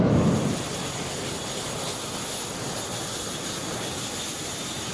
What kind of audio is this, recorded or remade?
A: recorded